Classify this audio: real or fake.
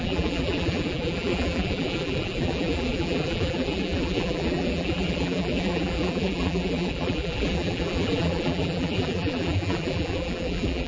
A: fake